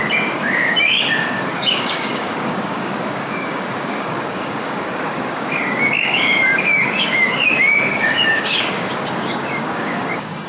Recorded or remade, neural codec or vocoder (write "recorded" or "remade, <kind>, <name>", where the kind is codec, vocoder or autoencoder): remade, codec, DAC